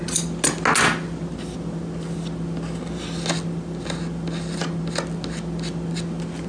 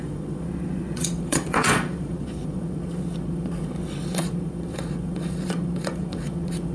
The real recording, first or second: first